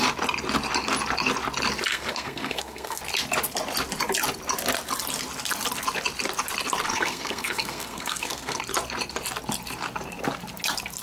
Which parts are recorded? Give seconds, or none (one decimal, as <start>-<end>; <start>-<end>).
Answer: 0.0-1.9; 3.0-6.9; 8.6-11.0